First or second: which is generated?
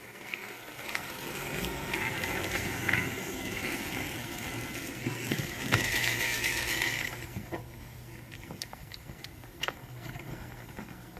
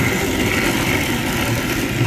first